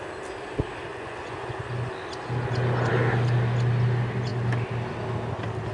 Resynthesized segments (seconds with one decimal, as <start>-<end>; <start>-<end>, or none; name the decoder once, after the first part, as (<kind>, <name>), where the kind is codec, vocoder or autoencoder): 0.9-1.6 (vocoder, Vocos)